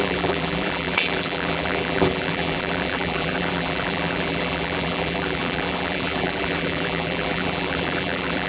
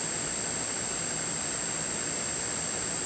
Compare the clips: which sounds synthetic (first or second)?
first